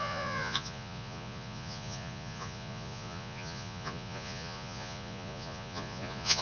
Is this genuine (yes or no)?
no